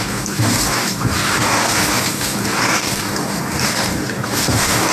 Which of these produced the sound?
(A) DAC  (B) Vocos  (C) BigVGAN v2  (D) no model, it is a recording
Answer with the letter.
A